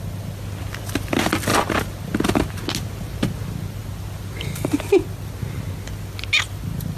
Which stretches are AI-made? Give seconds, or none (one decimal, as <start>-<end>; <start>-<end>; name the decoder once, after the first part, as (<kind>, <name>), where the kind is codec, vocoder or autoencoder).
none